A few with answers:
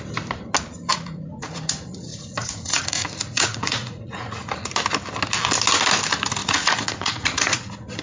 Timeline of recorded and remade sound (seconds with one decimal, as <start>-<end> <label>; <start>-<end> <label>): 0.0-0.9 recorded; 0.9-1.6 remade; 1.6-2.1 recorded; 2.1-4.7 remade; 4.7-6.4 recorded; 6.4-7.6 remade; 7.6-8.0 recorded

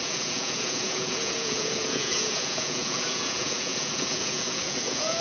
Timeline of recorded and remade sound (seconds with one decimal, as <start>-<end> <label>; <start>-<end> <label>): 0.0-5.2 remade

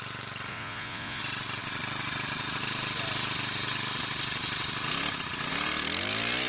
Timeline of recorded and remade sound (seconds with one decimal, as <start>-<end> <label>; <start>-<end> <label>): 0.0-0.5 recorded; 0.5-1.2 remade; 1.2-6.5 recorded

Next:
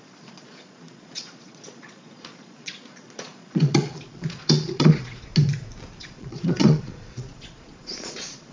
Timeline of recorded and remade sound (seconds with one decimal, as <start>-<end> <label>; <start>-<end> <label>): 0.0-5.3 remade; 5.3-6.0 recorded; 6.0-8.5 remade

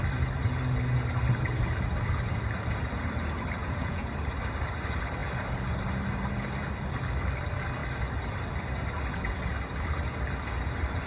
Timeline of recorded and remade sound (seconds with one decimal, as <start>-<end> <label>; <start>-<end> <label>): 0.0-3.6 recorded; 3.6-4.1 remade; 4.1-11.1 recorded